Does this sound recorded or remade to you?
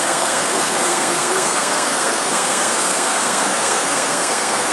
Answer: remade